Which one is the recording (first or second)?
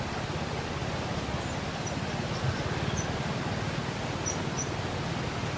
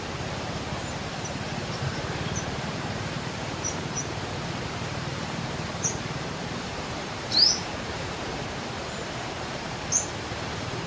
first